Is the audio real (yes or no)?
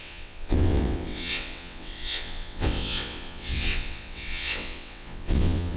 no